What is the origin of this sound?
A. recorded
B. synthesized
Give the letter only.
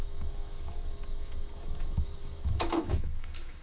B